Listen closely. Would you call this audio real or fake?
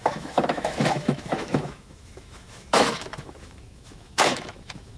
fake